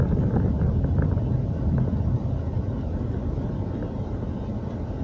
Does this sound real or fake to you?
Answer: real